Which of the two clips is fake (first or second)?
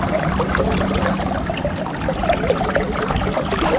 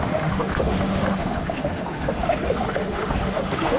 second